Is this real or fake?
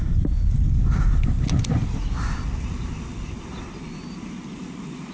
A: real